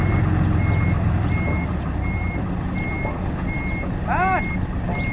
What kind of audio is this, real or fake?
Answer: real